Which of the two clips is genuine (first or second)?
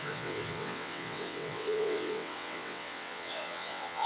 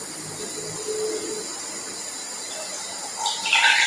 second